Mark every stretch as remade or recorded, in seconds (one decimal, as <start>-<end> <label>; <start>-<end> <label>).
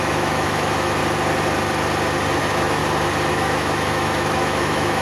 0.0-1.0 remade; 1.0-2.4 recorded; 2.4-2.8 remade; 2.8-3.3 recorded; 3.3-5.0 remade